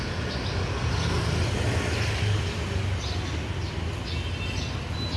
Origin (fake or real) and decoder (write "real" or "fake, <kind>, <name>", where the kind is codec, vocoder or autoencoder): real